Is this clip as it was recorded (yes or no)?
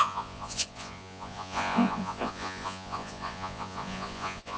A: no